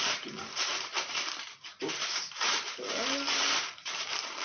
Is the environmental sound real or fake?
fake